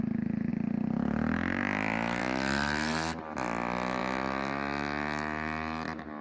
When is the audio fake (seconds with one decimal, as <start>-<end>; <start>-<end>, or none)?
none